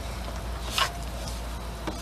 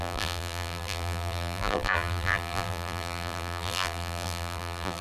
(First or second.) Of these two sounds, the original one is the first